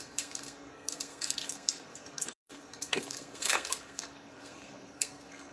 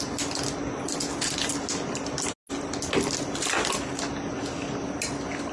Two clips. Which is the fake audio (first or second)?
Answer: first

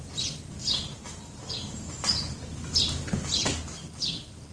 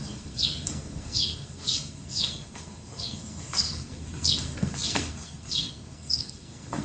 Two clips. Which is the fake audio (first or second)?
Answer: second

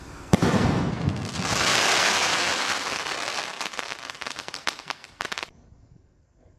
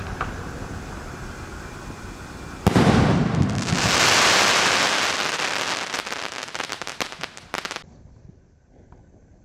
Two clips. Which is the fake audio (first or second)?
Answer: first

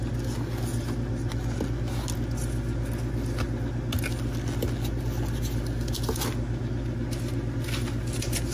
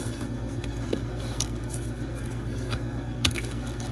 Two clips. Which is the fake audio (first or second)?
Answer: second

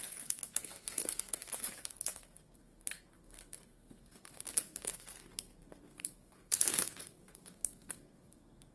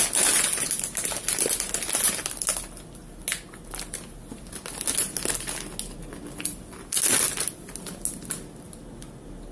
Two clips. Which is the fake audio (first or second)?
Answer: first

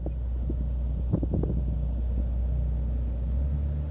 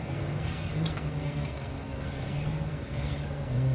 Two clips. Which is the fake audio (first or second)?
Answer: second